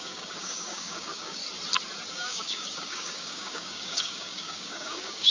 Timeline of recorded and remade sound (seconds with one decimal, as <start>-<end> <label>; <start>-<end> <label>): 0.0-1.4 remade; 1.4-2.1 recorded; 2.1-5.3 remade